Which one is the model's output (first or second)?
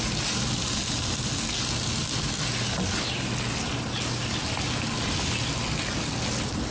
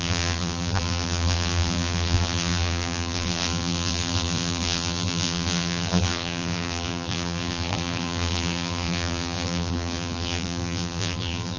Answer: second